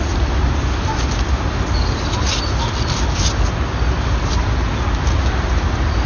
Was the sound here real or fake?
real